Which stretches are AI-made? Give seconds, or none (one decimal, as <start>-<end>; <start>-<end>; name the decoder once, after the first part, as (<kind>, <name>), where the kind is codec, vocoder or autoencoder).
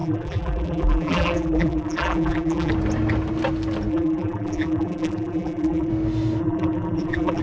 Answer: 0.0-2.7 (vocoder, BigVGAN v2); 3.9-5.9; 6.4-7.4